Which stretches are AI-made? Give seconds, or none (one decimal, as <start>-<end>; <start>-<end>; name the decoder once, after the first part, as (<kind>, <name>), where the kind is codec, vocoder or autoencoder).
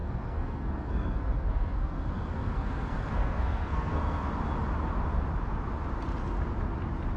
0.0-4.3 (codec, SNAC)